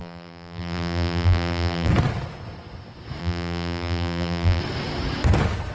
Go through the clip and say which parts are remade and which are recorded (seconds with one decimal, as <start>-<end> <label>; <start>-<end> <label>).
0.0-1.9 remade; 1.9-3.2 recorded; 3.2-4.6 remade; 4.6-5.7 recorded